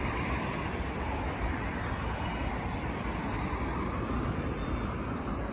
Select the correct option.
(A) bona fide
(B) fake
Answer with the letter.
B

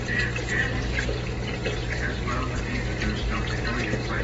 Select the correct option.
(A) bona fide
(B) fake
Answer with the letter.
A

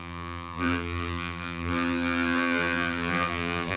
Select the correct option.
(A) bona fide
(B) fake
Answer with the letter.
B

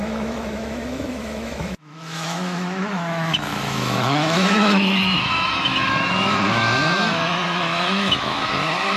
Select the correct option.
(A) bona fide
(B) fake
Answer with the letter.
B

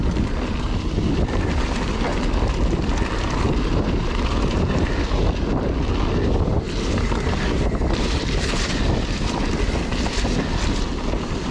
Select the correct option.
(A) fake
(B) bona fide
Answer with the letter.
B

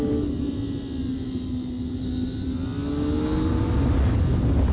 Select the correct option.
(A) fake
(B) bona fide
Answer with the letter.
B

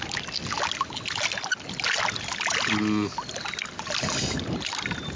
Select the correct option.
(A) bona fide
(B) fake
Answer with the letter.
A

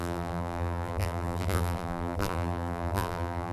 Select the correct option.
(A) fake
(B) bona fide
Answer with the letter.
A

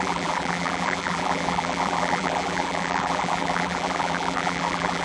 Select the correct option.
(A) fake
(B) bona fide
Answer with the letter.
A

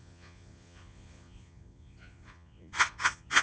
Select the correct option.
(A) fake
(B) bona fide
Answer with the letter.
A